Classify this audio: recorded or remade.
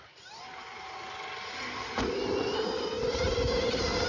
recorded